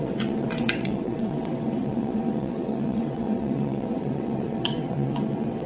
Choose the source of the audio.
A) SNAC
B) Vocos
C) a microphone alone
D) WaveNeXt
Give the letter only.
D